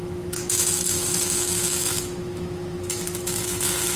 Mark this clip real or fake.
fake